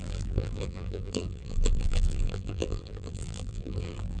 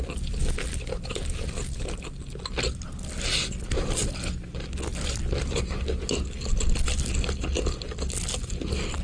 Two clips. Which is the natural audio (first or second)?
second